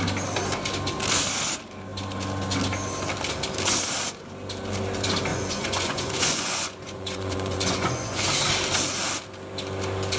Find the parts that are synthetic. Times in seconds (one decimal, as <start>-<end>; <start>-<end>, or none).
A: 5.3-8.2